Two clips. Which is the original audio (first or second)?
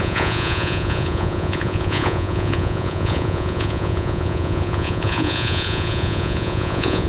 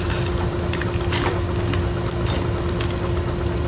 second